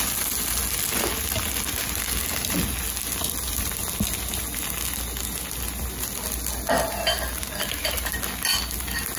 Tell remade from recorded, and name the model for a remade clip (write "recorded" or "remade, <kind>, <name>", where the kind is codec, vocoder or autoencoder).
recorded